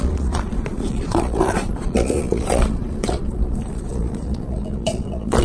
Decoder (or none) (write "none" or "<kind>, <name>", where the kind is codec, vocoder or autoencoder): vocoder, Vocos